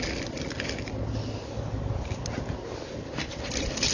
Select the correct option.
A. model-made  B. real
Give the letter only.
B